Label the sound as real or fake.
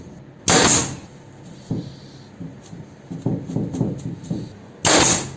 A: real